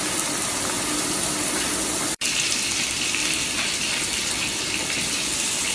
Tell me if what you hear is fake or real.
fake